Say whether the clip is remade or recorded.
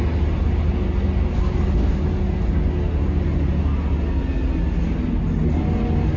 recorded